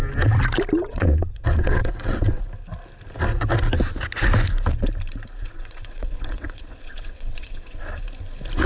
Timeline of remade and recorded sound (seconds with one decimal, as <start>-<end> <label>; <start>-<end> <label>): 0.0-0.8 recorded; 0.8-2.4 remade; 2.4-5.4 recorded; 5.4-7.8 remade; 7.8-8.7 recorded